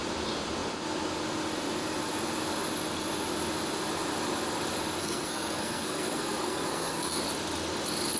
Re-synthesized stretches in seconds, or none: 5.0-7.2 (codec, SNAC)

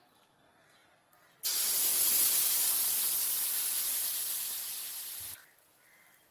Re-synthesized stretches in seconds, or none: none